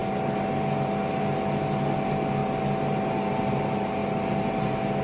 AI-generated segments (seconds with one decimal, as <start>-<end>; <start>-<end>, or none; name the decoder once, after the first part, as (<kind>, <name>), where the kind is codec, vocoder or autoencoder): none